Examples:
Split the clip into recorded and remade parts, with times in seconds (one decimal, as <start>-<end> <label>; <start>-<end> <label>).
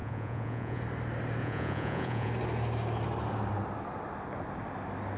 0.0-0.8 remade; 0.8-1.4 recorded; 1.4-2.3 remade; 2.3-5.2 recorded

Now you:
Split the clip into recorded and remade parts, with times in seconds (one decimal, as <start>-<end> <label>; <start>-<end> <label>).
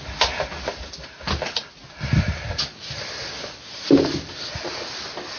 0.0-5.4 recorded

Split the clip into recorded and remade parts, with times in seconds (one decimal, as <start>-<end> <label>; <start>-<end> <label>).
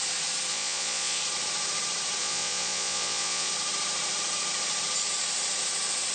0.0-0.5 recorded; 0.5-1.2 remade; 1.2-2.2 recorded; 2.2-3.5 remade; 3.5-6.1 recorded